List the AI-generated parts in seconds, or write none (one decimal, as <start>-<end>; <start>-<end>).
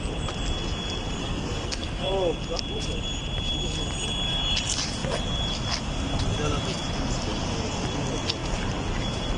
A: 1.2-2.1